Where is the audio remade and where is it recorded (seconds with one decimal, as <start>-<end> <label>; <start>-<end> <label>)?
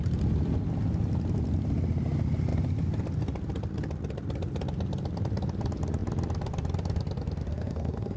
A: 0.0-7.5 recorded; 7.5-8.2 remade